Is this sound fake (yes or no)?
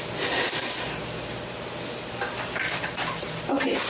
no